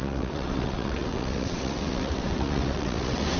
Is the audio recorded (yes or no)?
no